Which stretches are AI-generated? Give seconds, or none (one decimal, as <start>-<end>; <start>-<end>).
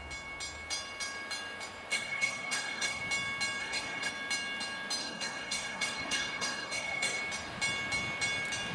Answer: 1.9-3.0; 3.6-4.1; 5.0-7.2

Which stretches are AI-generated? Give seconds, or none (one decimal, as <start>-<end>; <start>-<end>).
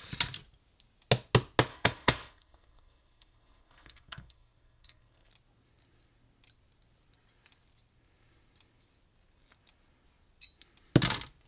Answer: 1.7-5.3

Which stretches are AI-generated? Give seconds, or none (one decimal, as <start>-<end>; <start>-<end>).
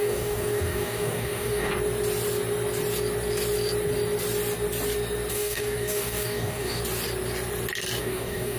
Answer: 0.0-1.7; 5.3-6.8; 8.0-8.6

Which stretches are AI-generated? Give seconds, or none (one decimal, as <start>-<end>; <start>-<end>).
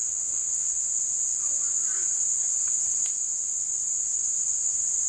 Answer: 0.0-0.7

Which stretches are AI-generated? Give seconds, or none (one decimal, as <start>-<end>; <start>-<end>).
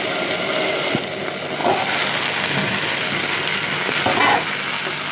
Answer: none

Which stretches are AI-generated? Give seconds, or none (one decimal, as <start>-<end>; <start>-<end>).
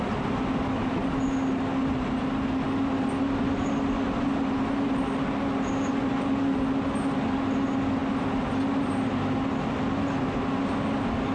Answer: none